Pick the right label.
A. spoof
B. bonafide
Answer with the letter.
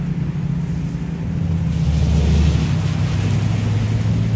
B